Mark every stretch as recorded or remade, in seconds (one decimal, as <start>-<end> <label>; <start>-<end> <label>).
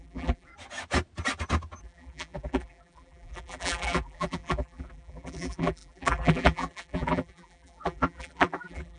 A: 0.0-0.5 remade; 0.5-1.8 recorded; 1.8-9.0 remade